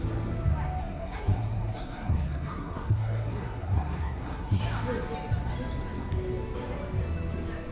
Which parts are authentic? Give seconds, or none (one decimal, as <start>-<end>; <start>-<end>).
0.0-0.8; 4.6-7.7